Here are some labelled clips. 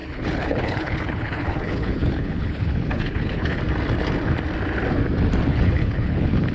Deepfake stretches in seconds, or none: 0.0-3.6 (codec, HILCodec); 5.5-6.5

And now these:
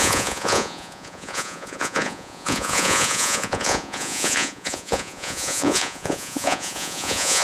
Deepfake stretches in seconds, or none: 0.0-7.4 (vocoder, Vocos)

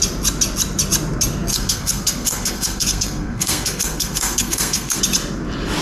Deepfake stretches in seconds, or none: 1.5-5.0 (codec, SNAC)

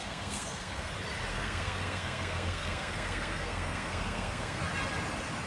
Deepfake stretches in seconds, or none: 0.0-0.9 (codec, SNAC); 1.3-4.6

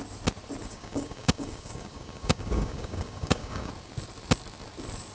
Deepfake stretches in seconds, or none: 0.6-3.7 (codec, DAC)

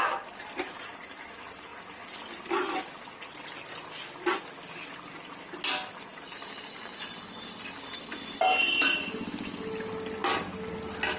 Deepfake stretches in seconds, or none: none

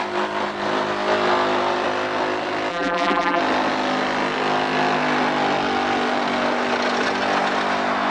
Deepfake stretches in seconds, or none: 2.7-3.4 (vocoder, BigVGAN v2)

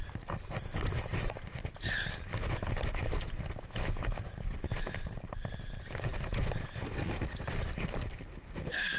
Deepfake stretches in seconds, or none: none